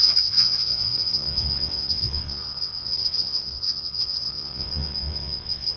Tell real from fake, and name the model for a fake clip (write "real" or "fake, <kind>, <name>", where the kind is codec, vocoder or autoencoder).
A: fake, vocoder, WaveNeXt